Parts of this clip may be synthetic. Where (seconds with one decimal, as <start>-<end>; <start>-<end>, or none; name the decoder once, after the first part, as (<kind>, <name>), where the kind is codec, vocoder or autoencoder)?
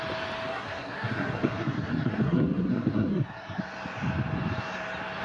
0.5-3.6 (codec, SNAC)